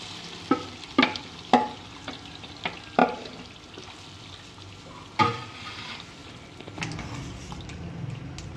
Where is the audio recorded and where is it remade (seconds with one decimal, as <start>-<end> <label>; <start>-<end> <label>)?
0.0-3.0 recorded; 3.0-3.5 remade; 3.5-6.2 recorded; 6.2-6.8 remade; 6.8-8.6 recorded